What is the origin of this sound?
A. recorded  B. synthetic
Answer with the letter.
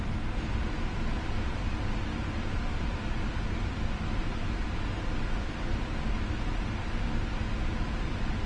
A